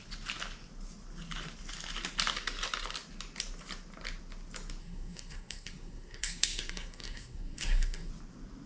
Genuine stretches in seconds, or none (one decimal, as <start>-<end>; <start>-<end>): 0.0-4.8; 8.1-8.7